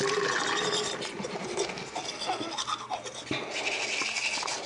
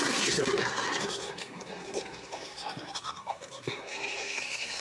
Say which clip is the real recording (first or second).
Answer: first